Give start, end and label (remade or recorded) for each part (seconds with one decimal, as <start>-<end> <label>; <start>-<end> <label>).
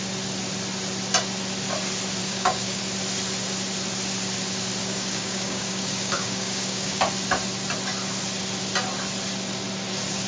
0.0-2.2 recorded; 2.2-2.8 remade; 2.8-4.8 recorded; 4.8-7.0 remade; 7.0-10.3 recorded